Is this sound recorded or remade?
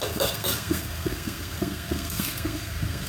remade